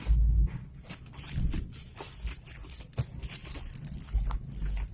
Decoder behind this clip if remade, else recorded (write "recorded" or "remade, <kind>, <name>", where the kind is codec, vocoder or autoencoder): recorded